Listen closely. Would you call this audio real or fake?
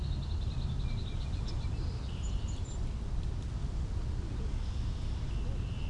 real